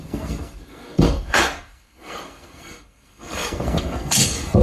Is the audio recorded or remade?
remade